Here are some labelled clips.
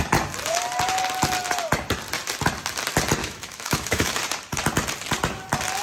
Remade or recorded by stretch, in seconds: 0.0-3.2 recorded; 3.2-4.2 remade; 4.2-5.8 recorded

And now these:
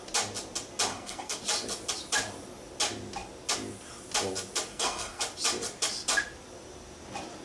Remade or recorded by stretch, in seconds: 0.0-0.9 recorded; 0.9-1.4 remade; 1.4-4.7 recorded; 4.7-5.2 remade; 5.2-7.4 recorded

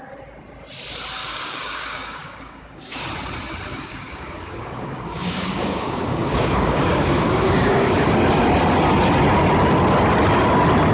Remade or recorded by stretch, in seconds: 0.0-1.2 recorded; 1.2-3.0 remade; 3.0-3.7 recorded; 3.7-8.1 remade; 8.1-10.9 recorded